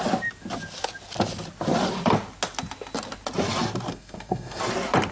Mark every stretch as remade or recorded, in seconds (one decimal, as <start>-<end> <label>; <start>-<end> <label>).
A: 0.0-3.9 recorded; 3.9-4.6 remade; 4.6-5.1 recorded